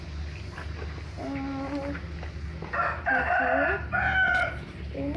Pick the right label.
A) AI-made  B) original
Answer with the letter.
B